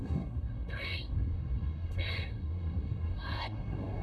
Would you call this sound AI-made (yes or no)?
yes